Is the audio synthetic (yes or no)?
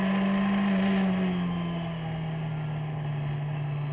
no